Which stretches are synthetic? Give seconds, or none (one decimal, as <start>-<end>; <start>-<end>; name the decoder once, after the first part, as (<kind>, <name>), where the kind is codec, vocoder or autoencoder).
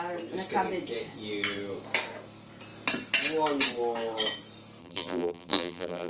4.8-6.1 (vocoder, BigVGAN v2)